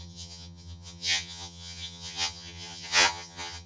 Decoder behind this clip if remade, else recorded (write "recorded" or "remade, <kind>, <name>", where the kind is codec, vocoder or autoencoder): remade, vocoder, HiFi-GAN